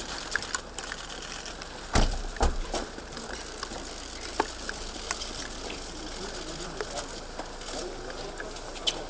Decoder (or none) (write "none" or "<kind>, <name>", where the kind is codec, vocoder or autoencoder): none